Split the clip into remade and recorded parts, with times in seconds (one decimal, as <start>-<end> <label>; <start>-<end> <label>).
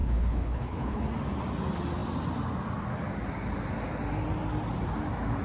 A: 0.0-1.0 remade; 1.0-5.4 recorded